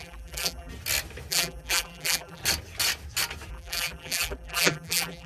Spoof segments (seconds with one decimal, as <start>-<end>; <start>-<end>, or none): 0.0-0.7; 1.3-2.4; 3.5-5.3